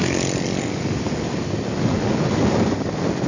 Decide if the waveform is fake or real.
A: real